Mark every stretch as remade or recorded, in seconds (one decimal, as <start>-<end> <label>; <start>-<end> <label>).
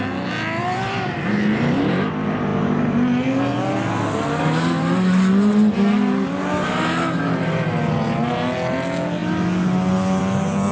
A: 0.0-0.6 recorded; 0.6-2.1 remade; 2.1-10.7 recorded